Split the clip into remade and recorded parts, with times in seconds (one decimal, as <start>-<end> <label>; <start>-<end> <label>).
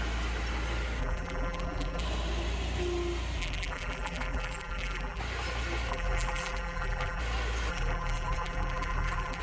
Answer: 0.0-1.0 recorded; 1.0-2.0 remade; 2.0-3.4 recorded; 3.4-5.2 remade; 5.2-5.9 recorded; 5.9-7.2 remade; 7.2-7.7 recorded; 7.7-9.4 remade